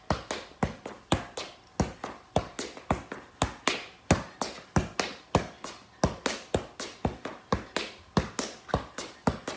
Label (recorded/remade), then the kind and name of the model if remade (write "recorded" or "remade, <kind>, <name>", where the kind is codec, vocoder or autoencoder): recorded